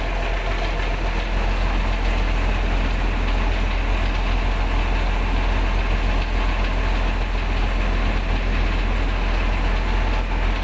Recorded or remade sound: recorded